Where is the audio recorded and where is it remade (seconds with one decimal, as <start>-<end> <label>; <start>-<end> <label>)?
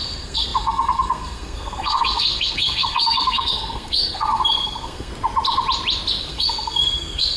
0.0-5.1 remade; 5.1-6.2 recorded; 6.2-7.4 remade